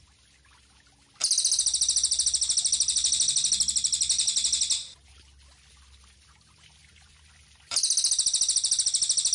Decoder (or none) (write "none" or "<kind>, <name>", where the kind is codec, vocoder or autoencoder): none